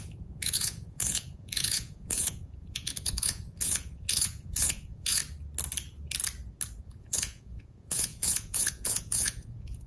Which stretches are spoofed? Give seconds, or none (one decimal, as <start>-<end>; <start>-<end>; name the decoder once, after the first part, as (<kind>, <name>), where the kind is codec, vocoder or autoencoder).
0.0-5.2 (vocoder, Vocos); 6.8-9.9